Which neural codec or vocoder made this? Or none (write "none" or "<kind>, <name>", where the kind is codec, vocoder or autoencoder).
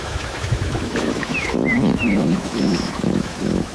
autoencoder, DAC-VAE